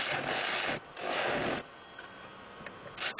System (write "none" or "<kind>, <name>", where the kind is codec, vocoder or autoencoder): none